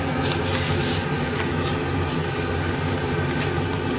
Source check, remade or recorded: recorded